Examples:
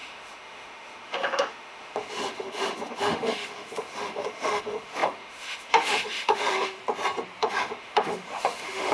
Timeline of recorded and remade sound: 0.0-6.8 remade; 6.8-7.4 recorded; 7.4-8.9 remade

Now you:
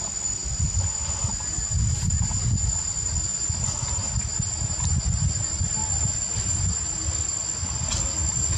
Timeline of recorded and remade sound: 0.0-8.6 recorded

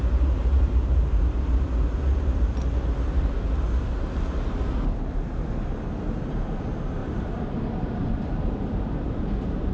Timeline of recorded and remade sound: 0.0-0.5 recorded; 0.5-1.5 remade; 1.5-7.0 recorded; 7.0-9.7 remade

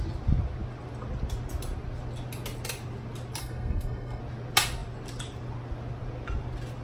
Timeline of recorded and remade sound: 0.0-3.4 recorded; 3.4-4.2 remade; 4.2-6.8 recorded